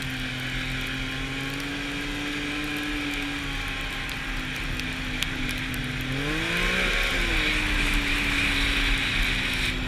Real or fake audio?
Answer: real